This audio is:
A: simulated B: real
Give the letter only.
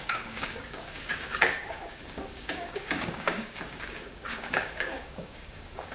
A